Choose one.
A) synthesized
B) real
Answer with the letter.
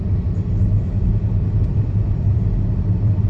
B